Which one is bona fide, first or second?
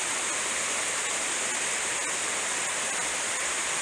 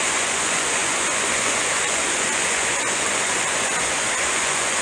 first